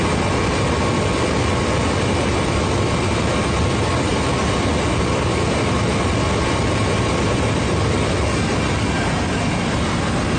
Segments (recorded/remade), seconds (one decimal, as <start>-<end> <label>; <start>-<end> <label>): 0.0-10.4 recorded

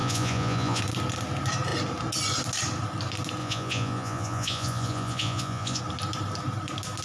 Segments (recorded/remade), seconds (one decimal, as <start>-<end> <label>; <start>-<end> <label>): 0.0-0.8 remade; 0.8-3.4 recorded; 3.4-5.8 remade; 5.8-7.0 recorded

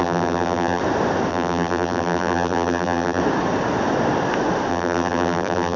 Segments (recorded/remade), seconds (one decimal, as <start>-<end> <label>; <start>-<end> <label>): 0.0-0.8 remade; 0.8-1.3 recorded; 1.3-3.2 remade; 3.2-4.7 recorded; 4.7-5.8 remade

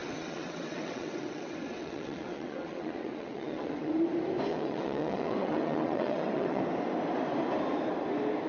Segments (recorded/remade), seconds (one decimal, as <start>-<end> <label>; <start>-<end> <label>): 0.0-3.9 remade; 3.9-4.5 recorded; 4.5-6.6 remade; 6.6-8.5 recorded

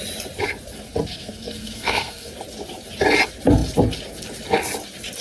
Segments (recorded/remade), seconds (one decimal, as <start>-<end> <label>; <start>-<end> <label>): 0.0-1.1 recorded; 1.1-2.3 remade; 2.3-5.2 recorded

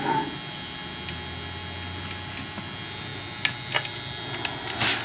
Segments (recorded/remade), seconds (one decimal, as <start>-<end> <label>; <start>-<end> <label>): 0.0-5.0 recorded

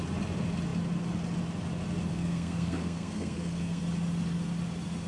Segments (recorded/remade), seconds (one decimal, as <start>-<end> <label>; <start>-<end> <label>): 0.0-2.1 recorded; 2.1-3.8 remade; 3.8-5.1 recorded

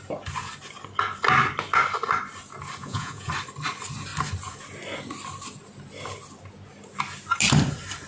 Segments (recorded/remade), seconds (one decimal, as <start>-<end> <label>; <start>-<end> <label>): 0.0-2.8 recorded; 2.8-3.3 remade; 3.3-8.1 recorded